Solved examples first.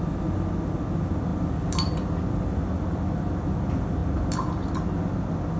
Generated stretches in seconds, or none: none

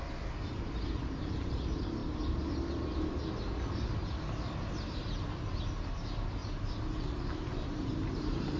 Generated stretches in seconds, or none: none